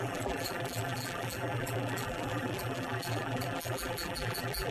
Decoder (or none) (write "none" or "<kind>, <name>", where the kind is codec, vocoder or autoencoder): vocoder, BigVGAN v2